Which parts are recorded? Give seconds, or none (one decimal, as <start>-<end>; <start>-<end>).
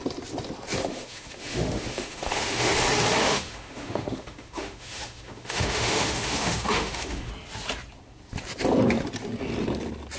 0.0-0.8; 2.7-3.2; 7.3-10.2